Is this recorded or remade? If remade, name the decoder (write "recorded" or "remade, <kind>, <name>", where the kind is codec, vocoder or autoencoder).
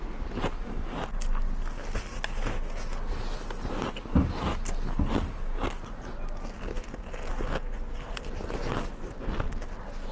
recorded